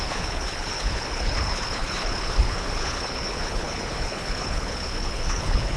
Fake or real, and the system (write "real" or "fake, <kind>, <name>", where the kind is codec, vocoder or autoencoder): fake, codec, HILCodec